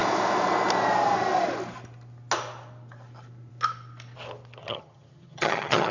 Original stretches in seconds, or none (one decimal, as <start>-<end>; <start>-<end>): 0.0-4.6